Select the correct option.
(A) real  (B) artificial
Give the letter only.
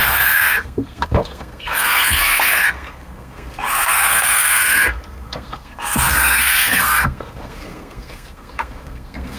B